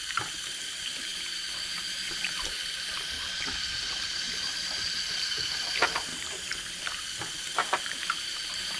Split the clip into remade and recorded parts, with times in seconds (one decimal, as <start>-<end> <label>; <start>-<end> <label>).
0.0-8.8 remade